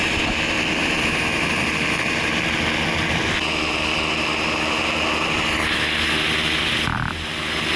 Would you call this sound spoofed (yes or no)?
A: no